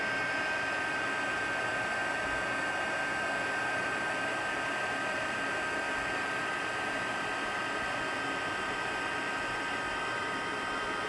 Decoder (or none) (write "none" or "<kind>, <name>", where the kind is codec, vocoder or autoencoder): vocoder, BigVGAN v2